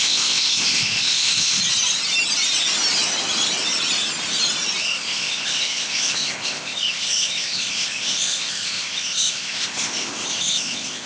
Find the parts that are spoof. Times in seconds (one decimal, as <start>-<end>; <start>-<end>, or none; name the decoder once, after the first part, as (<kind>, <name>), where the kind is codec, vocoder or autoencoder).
0.0-1.6 (codec, ZipCodec); 4.8-11.1